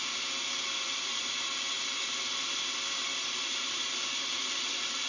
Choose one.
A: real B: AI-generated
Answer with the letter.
A